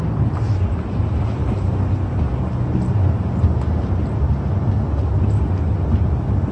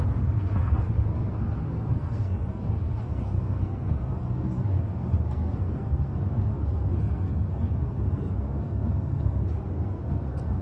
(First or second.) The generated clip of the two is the second